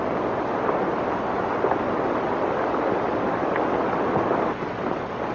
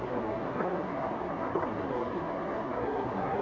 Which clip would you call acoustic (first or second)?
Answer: first